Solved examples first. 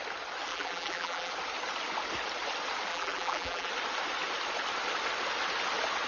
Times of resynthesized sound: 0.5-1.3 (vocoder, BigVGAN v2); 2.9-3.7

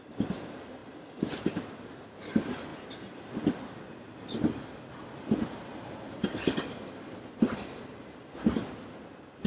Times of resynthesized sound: none